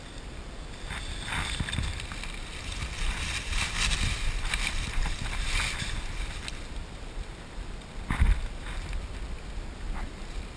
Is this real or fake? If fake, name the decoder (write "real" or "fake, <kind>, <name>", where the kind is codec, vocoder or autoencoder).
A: real